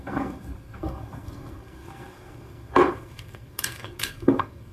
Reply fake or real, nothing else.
fake